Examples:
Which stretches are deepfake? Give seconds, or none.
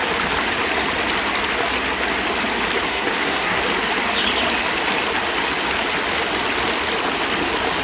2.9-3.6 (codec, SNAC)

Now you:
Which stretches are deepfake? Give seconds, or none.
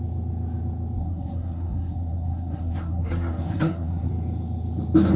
1.0-4.1 (codec, SNAC)